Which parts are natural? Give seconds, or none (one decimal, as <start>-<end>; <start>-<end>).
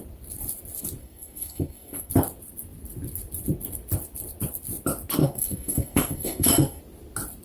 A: 0.0-1.0; 2.1-5.2; 6.8-7.4